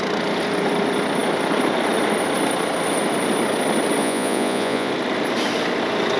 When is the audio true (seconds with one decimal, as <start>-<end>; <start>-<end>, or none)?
0.0-4.0; 4.9-6.2